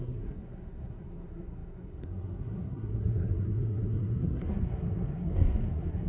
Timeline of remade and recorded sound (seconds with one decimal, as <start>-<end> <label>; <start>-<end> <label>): 0.0-6.1 remade